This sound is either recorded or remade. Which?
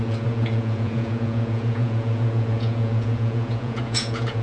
remade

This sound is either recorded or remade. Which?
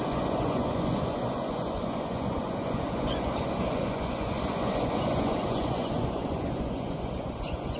remade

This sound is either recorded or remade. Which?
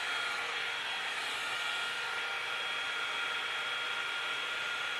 recorded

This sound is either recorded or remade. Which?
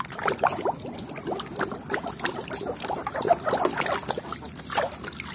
recorded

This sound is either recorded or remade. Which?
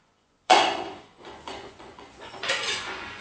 remade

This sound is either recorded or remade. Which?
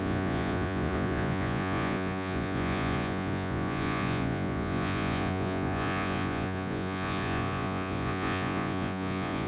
remade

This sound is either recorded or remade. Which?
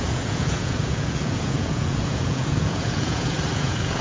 remade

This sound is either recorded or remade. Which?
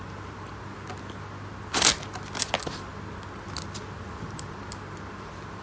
recorded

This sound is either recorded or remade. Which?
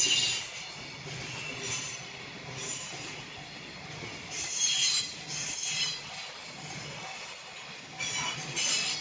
recorded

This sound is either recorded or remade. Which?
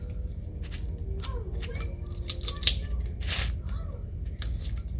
recorded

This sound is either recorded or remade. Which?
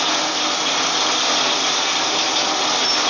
recorded